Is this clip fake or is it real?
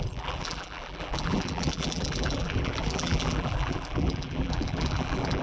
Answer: fake